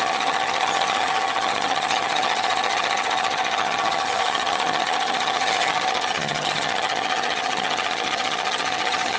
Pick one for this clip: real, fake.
fake